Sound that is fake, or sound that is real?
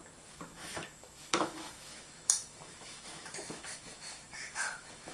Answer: fake